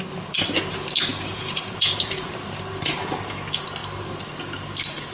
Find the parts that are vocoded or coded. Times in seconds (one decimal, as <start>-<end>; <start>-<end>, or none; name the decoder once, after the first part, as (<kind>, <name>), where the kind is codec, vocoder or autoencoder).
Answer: 1.1-2.3 (vocoder, Vocos)